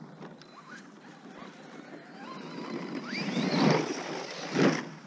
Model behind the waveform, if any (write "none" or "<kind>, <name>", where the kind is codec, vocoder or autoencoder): none